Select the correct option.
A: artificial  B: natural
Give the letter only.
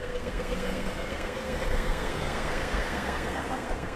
A